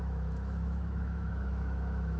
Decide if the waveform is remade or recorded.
remade